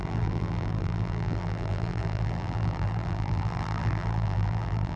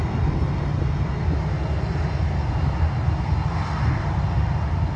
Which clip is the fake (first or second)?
first